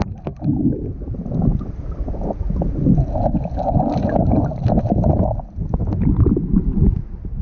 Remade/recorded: recorded